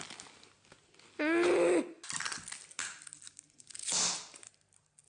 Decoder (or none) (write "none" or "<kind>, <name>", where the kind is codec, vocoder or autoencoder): none